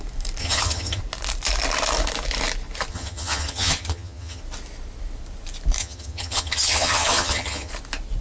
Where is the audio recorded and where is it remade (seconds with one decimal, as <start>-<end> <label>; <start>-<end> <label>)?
0.0-0.4 recorded; 0.4-1.0 remade; 1.0-2.9 recorded; 2.9-4.4 remade; 4.4-5.8 recorded; 5.8-7.7 remade; 7.7-8.2 recorded